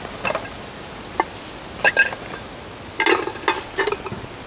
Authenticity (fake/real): real